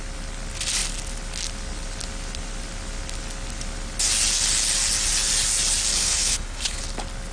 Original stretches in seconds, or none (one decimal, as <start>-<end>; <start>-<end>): 0.0-5.9; 6.8-7.3